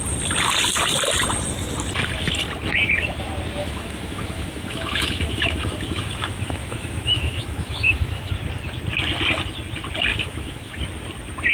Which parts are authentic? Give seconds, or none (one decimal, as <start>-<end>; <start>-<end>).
0.0-3.6; 8.3-10.1; 10.8-11.5